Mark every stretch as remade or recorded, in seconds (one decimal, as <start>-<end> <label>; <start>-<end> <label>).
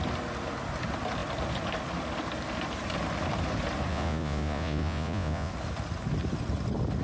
0.0-3.9 recorded; 3.9-5.5 remade; 5.5-7.0 recorded